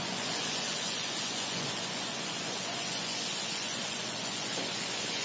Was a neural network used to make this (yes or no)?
yes